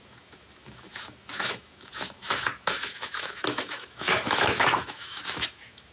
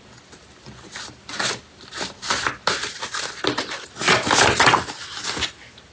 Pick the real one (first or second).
second